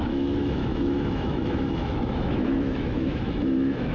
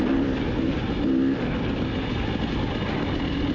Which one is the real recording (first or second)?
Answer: second